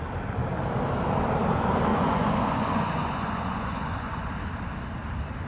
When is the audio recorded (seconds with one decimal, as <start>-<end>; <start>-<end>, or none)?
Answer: 0.0-1.9; 4.3-5.5